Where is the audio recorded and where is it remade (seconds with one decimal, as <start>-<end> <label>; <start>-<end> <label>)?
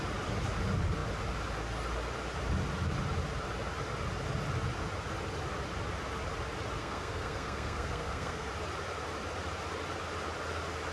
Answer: 0.0-6.8 recorded; 6.8-8.5 remade; 8.5-10.9 recorded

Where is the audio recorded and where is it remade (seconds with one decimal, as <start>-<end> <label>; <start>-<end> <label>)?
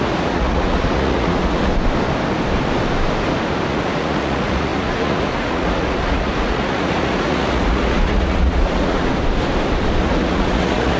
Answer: 0.0-1.7 remade; 1.7-3.7 recorded; 3.7-9.1 remade; 9.1-10.0 recorded; 10.0-11.0 remade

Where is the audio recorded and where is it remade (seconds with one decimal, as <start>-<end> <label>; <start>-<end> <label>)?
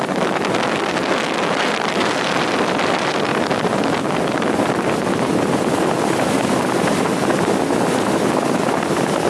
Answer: 0.0-9.3 recorded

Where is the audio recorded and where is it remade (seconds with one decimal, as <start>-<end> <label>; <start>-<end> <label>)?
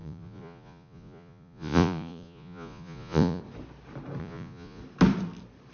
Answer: 0.0-3.4 remade; 3.4-4.2 recorded; 4.2-4.8 remade; 4.8-5.7 recorded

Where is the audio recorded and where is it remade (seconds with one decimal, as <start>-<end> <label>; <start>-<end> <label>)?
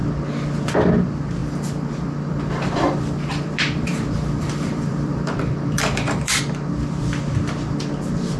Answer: 0.0-1.4 recorded; 1.4-6.4 remade; 6.4-8.4 recorded